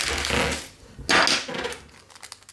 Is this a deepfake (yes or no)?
no